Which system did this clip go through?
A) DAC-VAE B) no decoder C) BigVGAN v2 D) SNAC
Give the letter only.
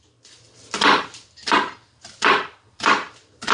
B